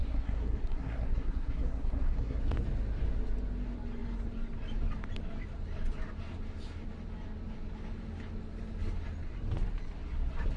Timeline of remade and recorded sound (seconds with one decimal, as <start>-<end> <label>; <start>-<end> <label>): 0.0-2.4 remade; 2.4-10.6 recorded